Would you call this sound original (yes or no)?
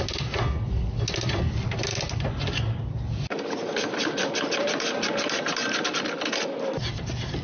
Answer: yes